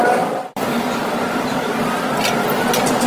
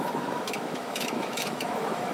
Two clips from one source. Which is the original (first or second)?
first